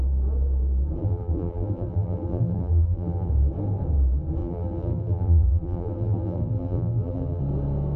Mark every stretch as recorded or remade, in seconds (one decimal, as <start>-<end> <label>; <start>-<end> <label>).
0.0-1.0 recorded; 1.0-3.3 remade; 3.3-4.4 recorded; 4.4-7.4 remade; 7.4-8.0 recorded